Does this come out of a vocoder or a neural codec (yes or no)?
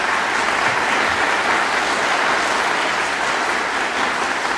no